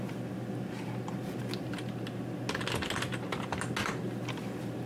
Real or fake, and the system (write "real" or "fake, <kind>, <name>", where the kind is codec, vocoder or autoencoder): real